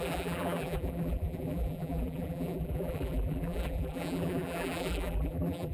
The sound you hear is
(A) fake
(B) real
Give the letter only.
A